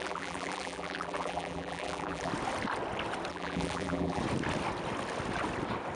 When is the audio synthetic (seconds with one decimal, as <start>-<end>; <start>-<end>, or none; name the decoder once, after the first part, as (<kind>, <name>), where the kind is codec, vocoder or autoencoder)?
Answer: 0.0-2.3 (vocoder, BigVGAN v2); 3.3-4.2